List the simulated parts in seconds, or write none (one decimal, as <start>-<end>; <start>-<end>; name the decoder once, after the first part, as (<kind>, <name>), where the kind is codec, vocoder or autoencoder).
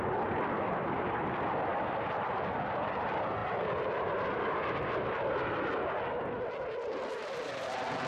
none